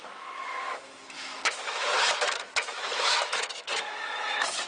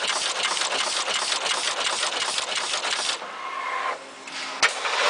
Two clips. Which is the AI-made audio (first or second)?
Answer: first